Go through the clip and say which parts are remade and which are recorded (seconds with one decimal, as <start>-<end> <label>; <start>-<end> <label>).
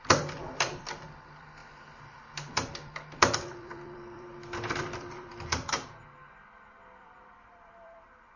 0.0-1.6 remade; 1.6-2.5 recorded; 2.5-5.3 remade; 5.3-7.0 recorded; 7.0-8.4 remade